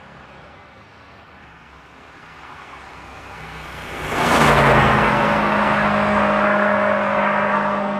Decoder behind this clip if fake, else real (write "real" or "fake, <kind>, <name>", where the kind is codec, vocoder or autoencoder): fake, codec, SNAC